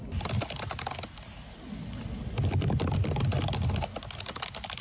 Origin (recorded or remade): recorded